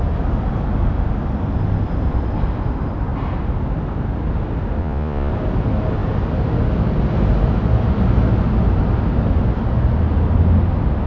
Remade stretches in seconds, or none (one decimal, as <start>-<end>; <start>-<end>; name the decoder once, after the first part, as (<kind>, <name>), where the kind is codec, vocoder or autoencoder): 4.8-5.3 (vocoder, Vocos)